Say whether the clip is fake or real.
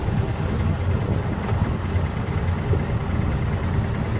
real